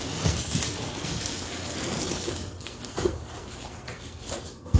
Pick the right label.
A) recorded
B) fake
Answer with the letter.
B